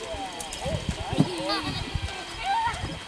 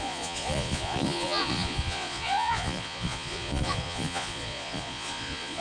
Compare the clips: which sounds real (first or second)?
first